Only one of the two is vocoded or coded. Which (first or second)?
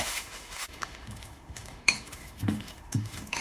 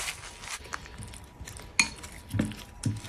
first